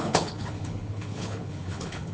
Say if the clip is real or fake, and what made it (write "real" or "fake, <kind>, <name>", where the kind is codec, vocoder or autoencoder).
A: fake, codec, HILCodec